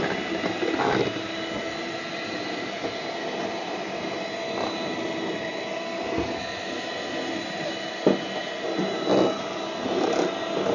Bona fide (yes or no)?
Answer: yes